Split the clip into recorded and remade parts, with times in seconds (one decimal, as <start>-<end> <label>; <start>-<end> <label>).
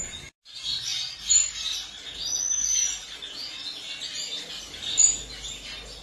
0.0-6.0 recorded